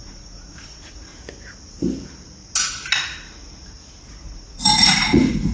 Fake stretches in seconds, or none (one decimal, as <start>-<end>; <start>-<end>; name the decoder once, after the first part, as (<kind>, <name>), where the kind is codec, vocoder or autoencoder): 0.0-1.1 (vocoder, Vocos); 4.1-5.5